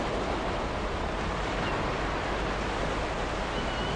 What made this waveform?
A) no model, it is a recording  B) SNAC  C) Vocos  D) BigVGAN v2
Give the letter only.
A